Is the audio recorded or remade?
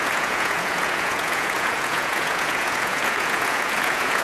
remade